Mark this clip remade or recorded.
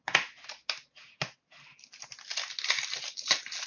recorded